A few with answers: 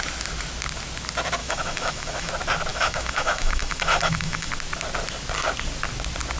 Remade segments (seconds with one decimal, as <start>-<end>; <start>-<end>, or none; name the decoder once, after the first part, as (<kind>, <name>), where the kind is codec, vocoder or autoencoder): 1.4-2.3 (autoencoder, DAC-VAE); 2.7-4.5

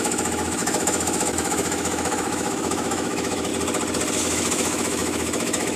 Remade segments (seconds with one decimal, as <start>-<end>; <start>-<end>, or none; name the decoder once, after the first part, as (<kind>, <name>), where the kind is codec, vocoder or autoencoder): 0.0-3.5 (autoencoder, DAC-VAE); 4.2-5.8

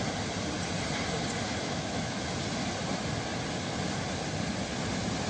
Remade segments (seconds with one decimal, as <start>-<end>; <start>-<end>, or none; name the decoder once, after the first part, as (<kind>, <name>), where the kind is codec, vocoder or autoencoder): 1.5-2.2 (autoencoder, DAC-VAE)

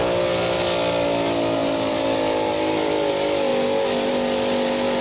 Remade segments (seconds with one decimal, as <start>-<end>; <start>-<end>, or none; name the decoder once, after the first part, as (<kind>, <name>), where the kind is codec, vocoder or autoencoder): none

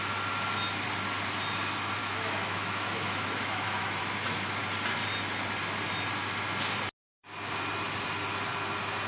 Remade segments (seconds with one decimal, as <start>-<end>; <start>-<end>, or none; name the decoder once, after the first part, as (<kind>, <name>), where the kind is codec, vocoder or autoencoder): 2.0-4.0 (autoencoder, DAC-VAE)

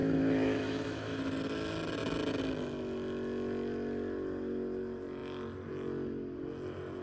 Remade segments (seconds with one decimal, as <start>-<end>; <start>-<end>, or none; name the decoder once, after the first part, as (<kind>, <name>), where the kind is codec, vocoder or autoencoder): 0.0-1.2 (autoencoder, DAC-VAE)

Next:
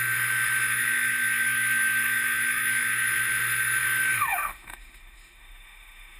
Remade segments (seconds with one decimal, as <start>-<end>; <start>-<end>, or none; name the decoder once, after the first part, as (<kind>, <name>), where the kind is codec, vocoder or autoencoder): 0.0-6.2 (autoencoder, DAC-VAE)

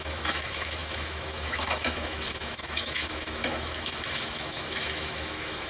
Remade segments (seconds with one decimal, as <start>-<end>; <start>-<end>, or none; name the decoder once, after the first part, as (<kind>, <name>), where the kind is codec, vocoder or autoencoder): 0.0-5.7 (autoencoder, DAC-VAE)